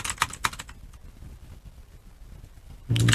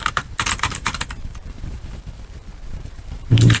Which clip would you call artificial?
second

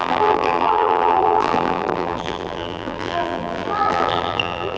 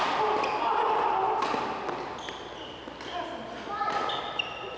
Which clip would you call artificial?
first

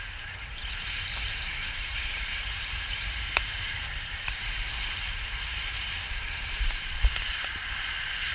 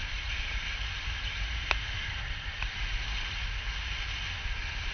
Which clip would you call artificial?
first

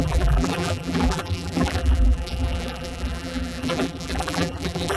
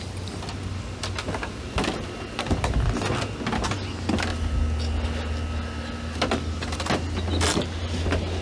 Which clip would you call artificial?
first